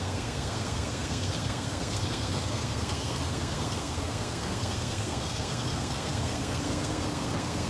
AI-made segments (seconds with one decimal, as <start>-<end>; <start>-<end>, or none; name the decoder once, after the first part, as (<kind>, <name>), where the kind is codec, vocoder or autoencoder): 0.0-7.7 (codec, SNAC)